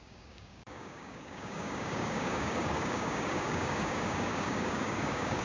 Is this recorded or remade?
remade